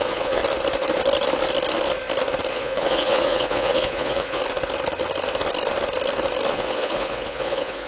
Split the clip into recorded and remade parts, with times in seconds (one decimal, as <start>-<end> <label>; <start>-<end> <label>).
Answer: 0.0-0.4 remade; 0.4-2.5 recorded; 2.5-4.4 remade; 4.4-6.5 recorded; 6.5-7.9 remade